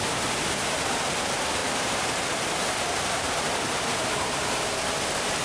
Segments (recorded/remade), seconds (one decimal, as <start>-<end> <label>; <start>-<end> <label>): 0.0-1.6 recorded; 1.6-4.8 remade; 4.8-5.4 recorded